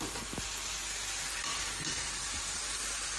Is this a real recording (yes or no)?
yes